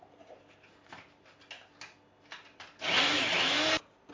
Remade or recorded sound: recorded